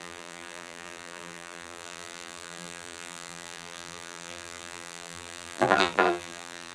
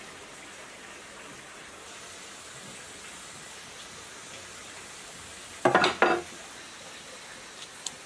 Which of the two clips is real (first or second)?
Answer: second